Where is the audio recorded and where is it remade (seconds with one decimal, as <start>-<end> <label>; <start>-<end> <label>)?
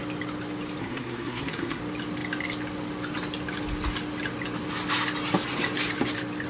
0.0-0.8 recorded; 0.8-1.8 remade; 1.8-6.5 recorded